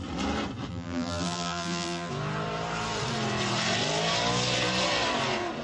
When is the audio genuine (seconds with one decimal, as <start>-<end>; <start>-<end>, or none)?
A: 0.0-0.7; 2.1-5.6